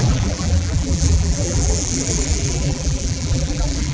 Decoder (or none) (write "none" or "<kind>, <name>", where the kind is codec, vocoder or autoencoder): vocoder, BigVGAN v2